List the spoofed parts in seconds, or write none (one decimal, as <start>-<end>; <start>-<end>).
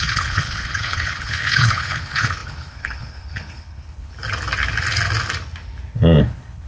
0.0-4.1; 6.2-6.7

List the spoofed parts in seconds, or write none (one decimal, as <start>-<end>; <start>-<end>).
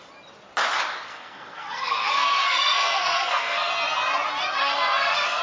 1.1-3.7; 4.6-5.4